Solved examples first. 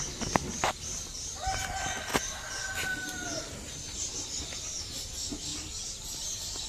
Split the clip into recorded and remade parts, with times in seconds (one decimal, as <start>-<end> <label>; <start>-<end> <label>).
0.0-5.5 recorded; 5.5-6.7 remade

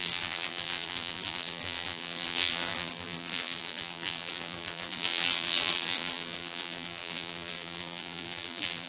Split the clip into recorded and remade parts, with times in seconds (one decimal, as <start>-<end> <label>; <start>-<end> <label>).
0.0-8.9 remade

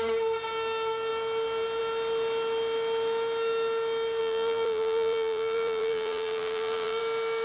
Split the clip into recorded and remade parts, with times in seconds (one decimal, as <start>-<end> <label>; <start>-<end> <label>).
0.0-4.2 recorded; 4.2-7.0 remade; 7.0-7.4 recorded

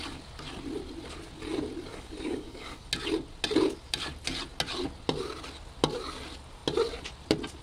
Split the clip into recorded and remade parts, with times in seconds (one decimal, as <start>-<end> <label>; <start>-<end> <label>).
0.0-1.9 recorded; 1.9-2.9 remade; 2.9-7.6 recorded

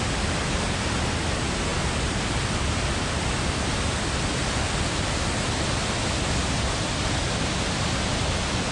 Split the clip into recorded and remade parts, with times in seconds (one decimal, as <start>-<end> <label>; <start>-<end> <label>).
0.0-8.7 recorded

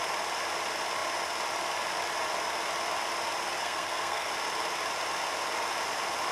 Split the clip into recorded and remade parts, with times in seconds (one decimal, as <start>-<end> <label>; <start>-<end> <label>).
0.0-3.6 recorded; 3.6-4.3 remade; 4.3-6.3 recorded

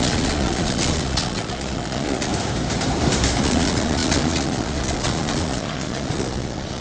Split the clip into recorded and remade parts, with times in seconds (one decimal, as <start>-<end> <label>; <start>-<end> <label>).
0.0-2.3 remade; 2.3-3.4 recorded; 3.4-6.8 remade